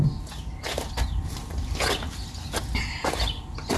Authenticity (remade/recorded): recorded